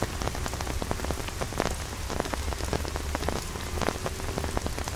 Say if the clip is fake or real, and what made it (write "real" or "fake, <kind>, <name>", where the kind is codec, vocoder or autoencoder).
real